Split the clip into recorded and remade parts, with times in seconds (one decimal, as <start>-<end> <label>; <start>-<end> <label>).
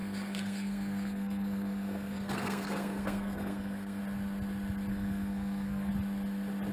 0.0-4.0 remade; 4.0-4.9 recorded; 4.9-5.9 remade; 5.9-6.7 recorded